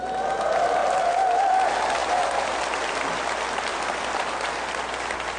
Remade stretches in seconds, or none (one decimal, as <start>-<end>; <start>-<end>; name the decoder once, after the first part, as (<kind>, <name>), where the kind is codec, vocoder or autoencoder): 2.0-2.6 (vocoder, BigVGAN v2); 3.7-4.5